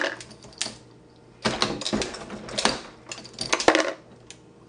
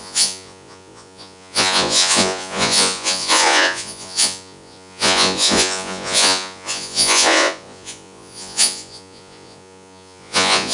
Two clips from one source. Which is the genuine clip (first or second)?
first